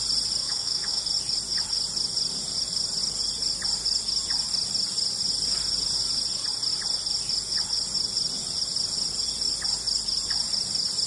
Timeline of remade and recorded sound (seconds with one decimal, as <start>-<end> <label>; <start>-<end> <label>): 0.0-0.4 recorded; 0.4-1.0 remade; 1.0-11.1 recorded